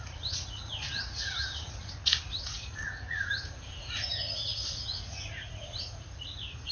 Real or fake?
fake